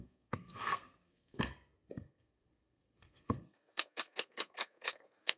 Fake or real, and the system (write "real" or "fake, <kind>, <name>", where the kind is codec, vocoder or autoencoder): fake, codec, SNAC